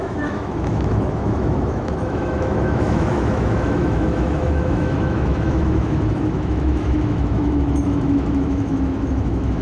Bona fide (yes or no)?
no